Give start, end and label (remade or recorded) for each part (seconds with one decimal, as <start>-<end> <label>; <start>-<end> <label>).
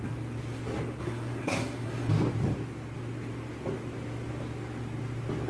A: 0.0-1.0 recorded; 1.0-2.1 remade; 2.1-5.5 recorded